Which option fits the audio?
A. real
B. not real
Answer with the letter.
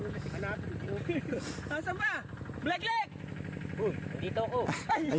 A